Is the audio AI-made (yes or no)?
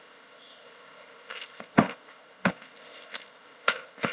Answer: yes